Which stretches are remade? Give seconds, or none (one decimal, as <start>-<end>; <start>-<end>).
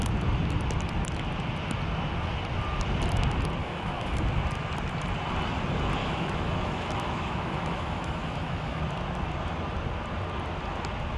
3.6-4.2; 6.0-8.8